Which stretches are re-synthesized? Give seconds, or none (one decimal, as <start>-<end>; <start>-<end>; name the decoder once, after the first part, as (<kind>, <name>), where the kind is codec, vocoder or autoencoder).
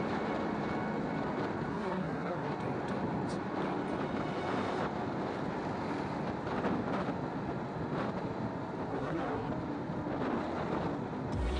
1.7-2.5 (codec, SNAC); 8.9-9.5